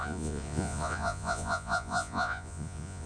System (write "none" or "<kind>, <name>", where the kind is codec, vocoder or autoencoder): vocoder, Vocos